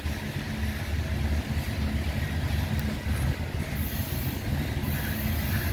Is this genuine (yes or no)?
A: yes